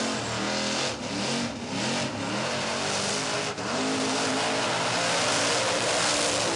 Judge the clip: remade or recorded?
recorded